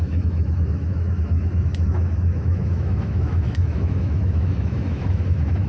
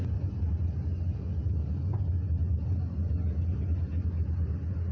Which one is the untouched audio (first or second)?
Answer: second